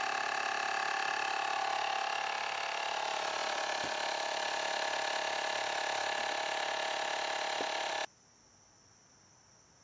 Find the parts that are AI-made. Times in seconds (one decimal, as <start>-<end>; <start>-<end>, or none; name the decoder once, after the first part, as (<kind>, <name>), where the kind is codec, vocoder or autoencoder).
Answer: none